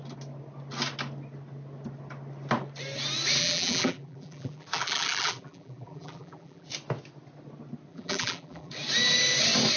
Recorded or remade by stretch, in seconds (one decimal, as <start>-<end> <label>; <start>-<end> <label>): 0.0-3.4 recorded; 3.4-6.7 remade; 6.7-7.9 recorded; 7.9-8.7 remade; 8.7-9.8 recorded